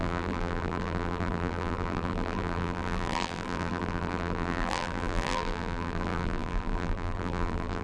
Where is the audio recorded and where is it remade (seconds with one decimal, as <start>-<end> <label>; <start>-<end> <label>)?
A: 0.0-7.8 remade